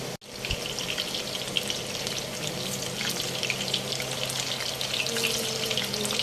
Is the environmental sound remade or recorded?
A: recorded